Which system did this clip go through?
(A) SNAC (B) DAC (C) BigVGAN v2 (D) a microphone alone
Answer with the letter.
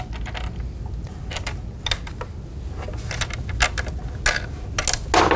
D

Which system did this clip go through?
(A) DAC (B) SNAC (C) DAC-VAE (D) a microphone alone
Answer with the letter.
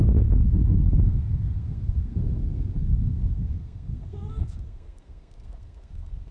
B